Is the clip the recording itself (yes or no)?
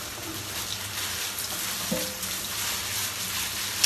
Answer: yes